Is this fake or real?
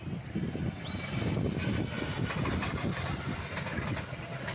real